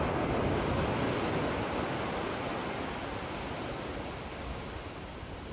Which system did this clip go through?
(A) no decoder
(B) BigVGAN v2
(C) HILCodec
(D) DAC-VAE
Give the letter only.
A